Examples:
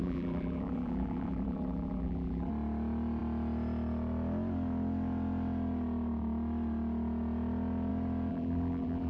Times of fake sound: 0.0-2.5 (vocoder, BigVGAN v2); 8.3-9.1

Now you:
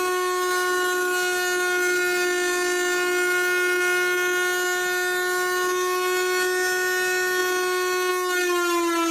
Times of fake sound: none

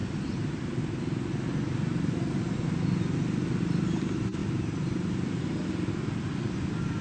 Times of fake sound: 0.0-0.8 (vocoder, BigVGAN v2)

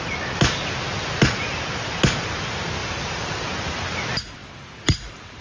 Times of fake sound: 2.8-3.5 (vocoder, BigVGAN v2); 4.4-5.4

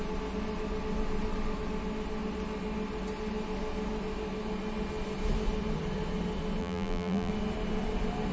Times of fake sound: 6.6-7.3 (vocoder, BigVGAN v2)

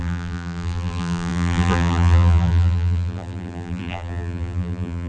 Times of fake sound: 0.0-5.1 (vocoder, BigVGAN v2)